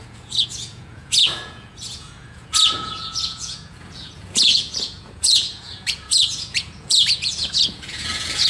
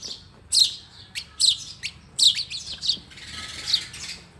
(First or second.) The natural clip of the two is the second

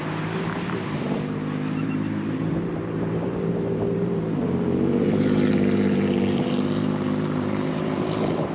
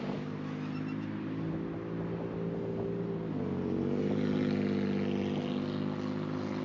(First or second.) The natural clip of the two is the second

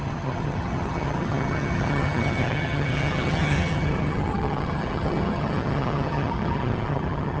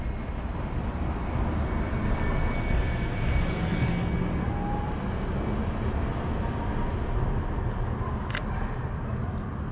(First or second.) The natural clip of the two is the second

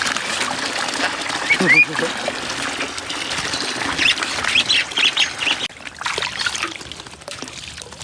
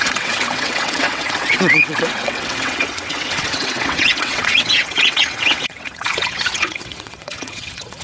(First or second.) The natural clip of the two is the first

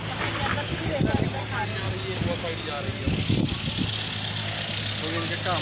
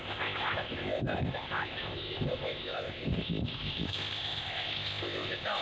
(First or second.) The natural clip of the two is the first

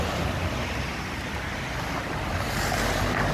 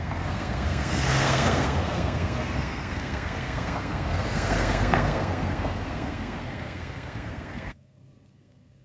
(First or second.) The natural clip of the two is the first